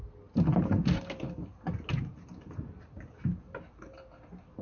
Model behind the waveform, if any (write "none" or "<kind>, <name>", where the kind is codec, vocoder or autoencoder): none